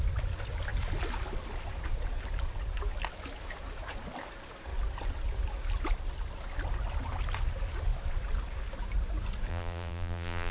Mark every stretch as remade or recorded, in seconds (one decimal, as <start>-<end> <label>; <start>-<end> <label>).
0.0-9.5 recorded; 9.5-10.5 remade